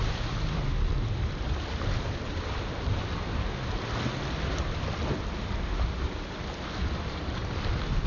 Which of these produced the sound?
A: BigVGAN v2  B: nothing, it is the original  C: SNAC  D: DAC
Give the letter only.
B